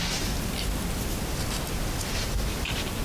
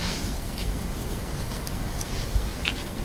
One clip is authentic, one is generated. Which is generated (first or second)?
second